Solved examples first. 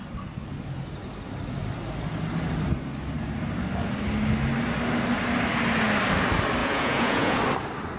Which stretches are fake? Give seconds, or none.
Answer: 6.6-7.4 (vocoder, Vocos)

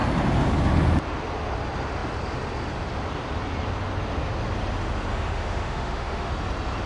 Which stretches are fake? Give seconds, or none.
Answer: 5.1-6.3 (autoencoder, DAC-VAE)

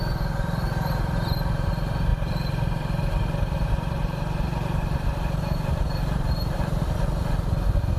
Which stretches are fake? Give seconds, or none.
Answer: 2.1-6.8 (vocoder, BigVGAN v2)

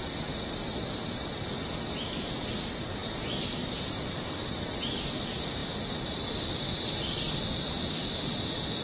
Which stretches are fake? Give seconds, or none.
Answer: none